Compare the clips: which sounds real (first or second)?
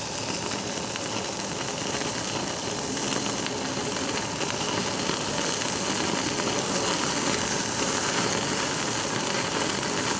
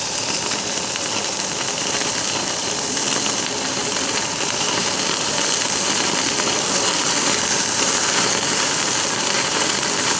first